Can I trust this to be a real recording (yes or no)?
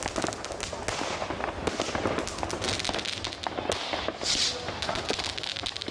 yes